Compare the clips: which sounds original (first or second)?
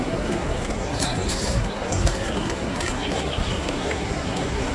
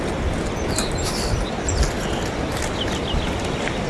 second